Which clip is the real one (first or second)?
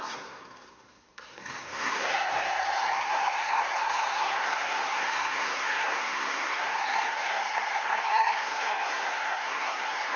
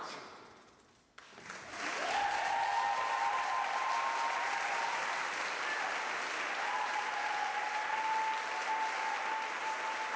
second